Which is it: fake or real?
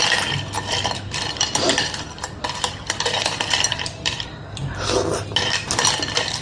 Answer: fake